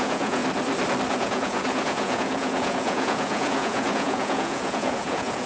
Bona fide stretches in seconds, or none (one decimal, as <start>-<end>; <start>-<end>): 0.4-1.1